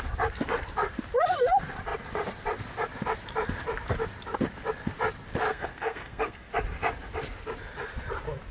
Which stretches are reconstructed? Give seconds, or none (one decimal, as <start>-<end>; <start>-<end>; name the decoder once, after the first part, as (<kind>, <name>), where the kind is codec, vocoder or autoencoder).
5.5-6.5 (codec, SNAC)